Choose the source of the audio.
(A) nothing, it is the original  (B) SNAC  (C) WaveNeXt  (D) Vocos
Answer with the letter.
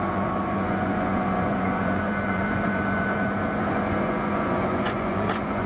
D